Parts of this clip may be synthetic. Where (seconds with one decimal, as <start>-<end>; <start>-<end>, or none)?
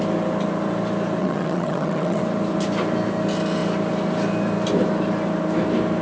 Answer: 1.2-2.2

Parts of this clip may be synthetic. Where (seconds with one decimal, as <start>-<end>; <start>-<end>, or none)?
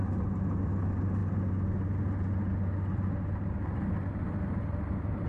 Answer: none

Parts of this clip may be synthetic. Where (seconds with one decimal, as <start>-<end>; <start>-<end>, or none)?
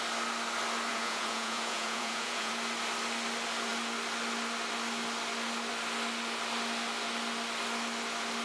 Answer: 0.9-2.5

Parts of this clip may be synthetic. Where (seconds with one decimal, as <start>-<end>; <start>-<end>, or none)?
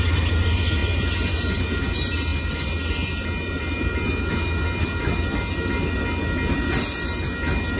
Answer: none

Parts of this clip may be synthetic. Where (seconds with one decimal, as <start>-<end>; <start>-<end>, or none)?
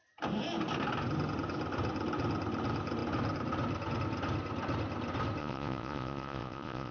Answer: 5.4-6.9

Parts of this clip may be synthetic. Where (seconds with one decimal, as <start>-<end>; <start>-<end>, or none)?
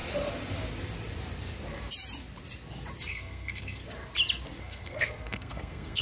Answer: 3.1-3.8; 4.6-6.0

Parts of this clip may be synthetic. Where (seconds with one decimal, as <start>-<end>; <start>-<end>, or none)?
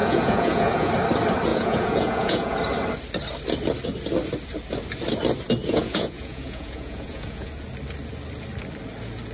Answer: 0.0-0.9; 1.5-2.5; 5.6-7.5